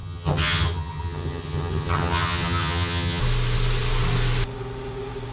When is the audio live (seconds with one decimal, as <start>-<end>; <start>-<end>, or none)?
3.2-5.3